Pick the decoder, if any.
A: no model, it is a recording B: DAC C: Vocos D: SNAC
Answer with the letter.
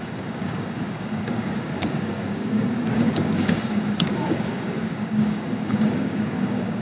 B